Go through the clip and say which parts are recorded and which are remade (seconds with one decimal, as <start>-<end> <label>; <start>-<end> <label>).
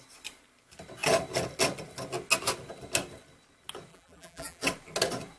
0.0-3.9 recorded; 3.9-4.6 remade; 4.6-5.4 recorded